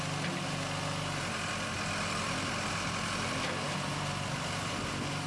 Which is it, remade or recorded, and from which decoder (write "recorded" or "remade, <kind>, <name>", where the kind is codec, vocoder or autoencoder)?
recorded